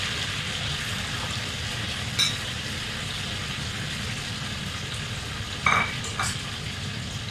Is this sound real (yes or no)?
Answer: yes